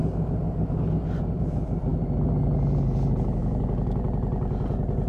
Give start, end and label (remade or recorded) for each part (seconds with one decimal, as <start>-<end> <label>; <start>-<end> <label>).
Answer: 0.0-3.4 recorded; 3.4-4.0 remade; 4.0-5.1 recorded